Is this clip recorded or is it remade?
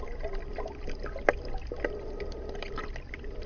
recorded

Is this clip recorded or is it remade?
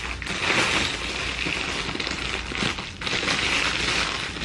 recorded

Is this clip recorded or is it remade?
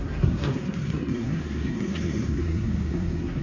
remade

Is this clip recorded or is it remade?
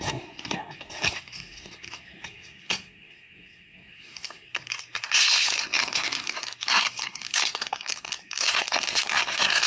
remade